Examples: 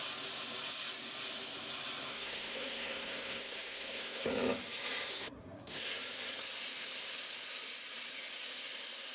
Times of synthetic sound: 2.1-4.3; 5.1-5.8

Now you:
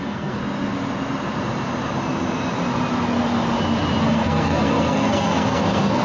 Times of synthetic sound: 0.0-0.4; 4.0-6.0

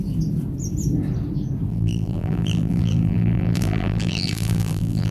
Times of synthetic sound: 1.7-5.1

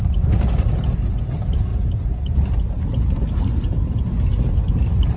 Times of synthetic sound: none